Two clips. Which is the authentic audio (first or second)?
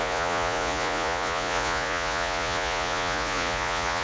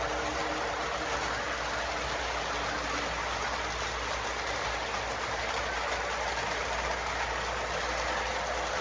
second